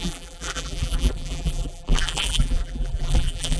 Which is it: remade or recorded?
remade